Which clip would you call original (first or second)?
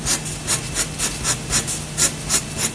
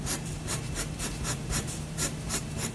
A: first